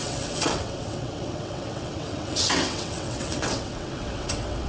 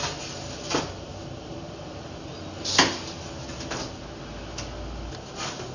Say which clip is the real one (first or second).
second